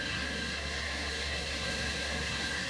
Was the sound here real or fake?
fake